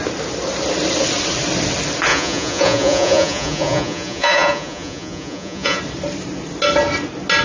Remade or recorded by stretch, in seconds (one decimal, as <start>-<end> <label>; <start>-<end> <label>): 0.0-2.1 recorded; 2.1-5.8 remade; 5.8-7.4 recorded